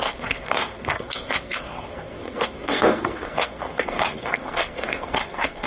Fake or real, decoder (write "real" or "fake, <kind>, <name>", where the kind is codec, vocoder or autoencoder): fake, codec, SNAC